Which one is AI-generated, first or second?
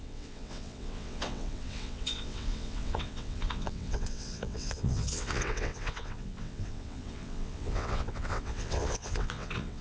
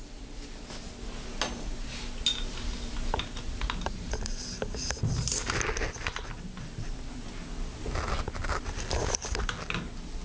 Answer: first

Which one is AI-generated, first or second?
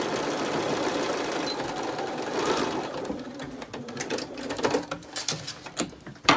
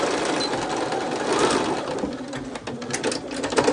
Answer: first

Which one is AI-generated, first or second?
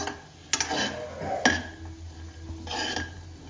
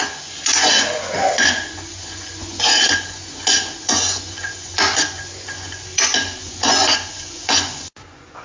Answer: second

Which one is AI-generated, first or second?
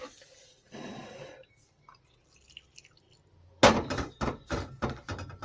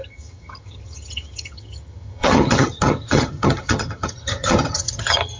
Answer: second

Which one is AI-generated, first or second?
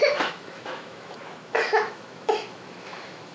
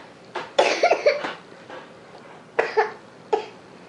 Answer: first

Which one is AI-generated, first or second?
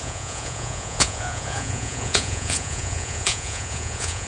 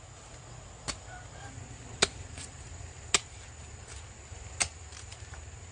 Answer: first